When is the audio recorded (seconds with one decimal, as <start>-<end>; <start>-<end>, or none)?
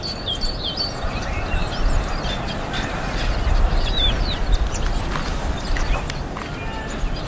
0.0-7.3